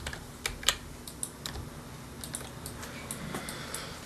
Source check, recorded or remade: recorded